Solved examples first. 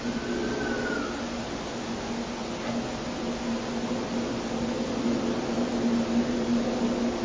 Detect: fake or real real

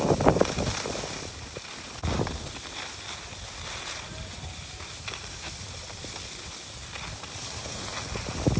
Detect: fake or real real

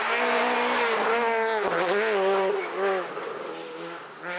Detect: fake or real real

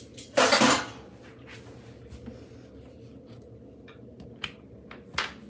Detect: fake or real real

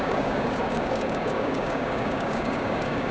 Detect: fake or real fake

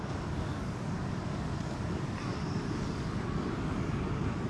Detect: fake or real fake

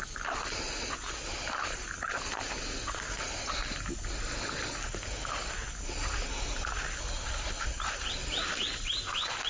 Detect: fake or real real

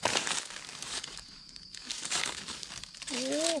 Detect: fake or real fake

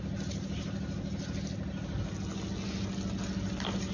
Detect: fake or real real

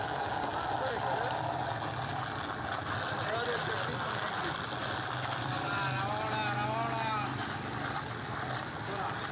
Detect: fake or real real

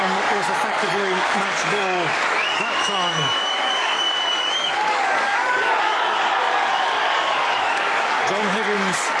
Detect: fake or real fake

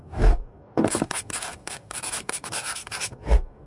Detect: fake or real fake